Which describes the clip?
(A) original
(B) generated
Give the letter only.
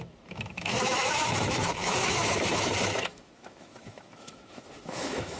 B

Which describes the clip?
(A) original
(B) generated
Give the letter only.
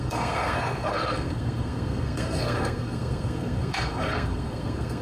B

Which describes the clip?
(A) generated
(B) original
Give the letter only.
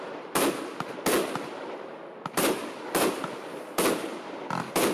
B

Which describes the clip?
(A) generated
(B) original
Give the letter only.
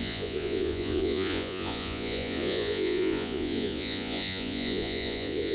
A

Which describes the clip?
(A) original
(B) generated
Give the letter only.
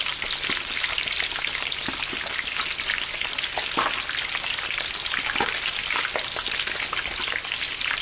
A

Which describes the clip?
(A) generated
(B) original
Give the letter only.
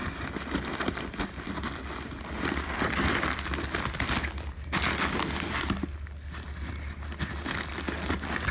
B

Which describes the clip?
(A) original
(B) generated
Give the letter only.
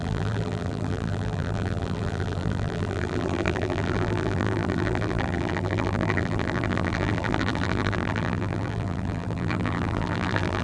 B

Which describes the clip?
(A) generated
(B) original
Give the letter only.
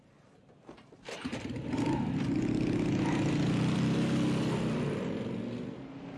B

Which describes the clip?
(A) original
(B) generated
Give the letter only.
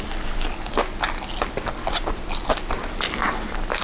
A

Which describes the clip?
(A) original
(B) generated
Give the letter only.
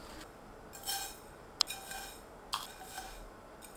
A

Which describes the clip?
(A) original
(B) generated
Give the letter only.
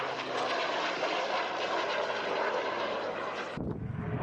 A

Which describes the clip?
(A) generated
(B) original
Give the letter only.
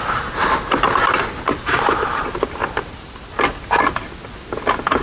B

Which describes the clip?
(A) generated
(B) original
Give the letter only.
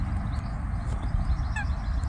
B